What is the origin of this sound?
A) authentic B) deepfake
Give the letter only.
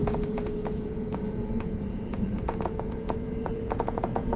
B